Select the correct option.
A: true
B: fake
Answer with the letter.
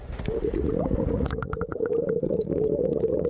B